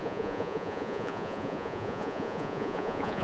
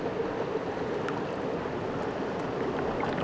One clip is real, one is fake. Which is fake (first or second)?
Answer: first